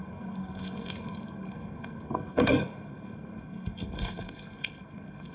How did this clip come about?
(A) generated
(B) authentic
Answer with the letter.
A